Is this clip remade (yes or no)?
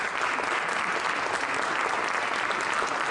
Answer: no